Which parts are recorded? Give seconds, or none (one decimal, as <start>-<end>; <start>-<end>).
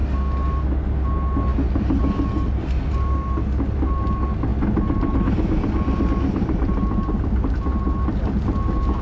0.0-9.0